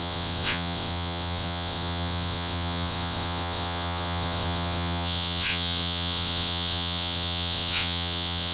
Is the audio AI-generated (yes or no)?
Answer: yes